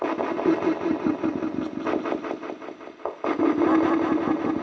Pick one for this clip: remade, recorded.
remade